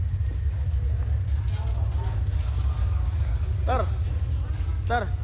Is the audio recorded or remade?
recorded